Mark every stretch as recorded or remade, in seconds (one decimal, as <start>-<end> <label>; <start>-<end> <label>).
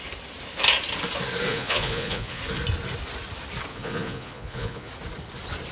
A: 0.0-1.5 recorded; 1.5-2.4 remade; 2.4-3.7 recorded; 3.7-4.9 remade; 4.9-5.7 recorded